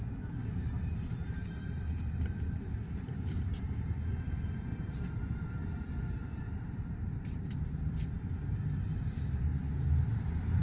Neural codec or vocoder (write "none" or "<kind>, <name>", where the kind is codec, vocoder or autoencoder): vocoder, BigVGAN v2